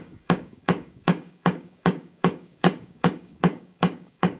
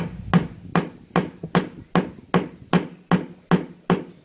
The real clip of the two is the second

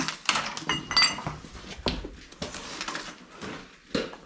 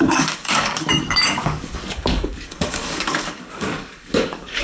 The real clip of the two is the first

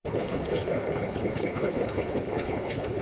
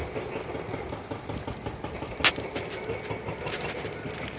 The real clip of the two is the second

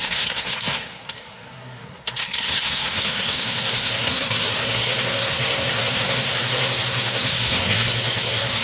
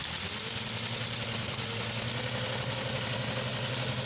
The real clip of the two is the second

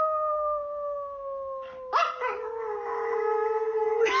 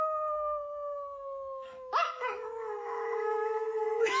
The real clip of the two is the first